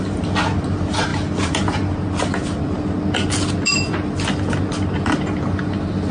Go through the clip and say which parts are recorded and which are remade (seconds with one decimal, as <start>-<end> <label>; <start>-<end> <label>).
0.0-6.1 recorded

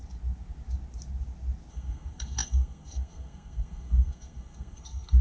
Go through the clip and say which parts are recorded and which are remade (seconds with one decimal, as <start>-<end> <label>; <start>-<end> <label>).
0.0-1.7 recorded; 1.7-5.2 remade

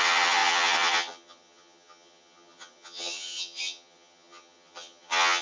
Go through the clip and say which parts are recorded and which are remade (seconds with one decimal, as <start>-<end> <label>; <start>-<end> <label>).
0.0-5.4 remade

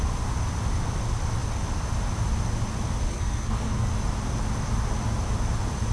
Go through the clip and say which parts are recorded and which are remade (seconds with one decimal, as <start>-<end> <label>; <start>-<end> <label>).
0.0-3.1 recorded; 3.1-3.9 remade; 3.9-5.9 recorded